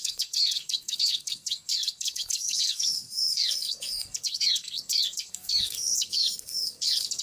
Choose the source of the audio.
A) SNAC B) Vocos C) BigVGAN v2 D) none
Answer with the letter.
A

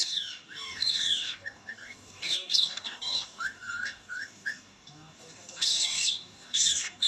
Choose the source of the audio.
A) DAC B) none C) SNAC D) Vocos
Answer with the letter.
A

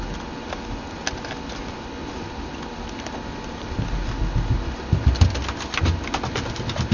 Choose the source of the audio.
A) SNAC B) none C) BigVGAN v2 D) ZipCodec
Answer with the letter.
B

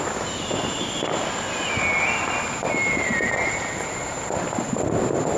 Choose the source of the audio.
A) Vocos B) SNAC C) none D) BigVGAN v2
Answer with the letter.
C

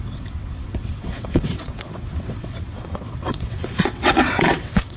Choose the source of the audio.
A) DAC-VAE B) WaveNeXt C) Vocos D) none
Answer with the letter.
B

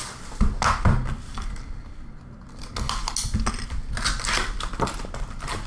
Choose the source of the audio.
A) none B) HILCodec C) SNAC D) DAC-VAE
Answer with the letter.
A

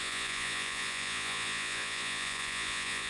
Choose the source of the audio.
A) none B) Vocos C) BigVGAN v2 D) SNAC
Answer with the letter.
B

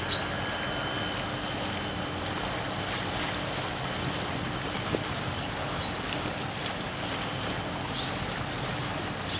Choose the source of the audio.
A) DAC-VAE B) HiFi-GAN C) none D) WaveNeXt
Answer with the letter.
C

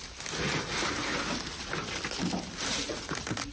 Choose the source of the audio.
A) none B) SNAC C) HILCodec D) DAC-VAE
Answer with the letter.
A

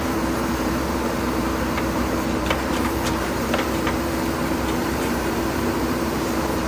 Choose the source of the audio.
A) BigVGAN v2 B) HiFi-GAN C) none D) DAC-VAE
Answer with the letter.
A